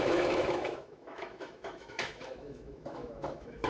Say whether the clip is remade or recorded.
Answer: remade